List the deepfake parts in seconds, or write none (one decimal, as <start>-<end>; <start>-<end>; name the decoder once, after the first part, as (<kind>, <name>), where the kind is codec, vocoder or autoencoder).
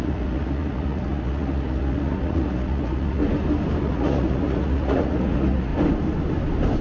0.0-3.2 (vocoder, Vocos); 3.8-5.7